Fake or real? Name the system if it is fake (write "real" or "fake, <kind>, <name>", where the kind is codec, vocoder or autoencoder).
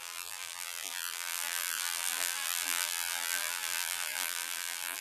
fake, vocoder, BigVGAN v2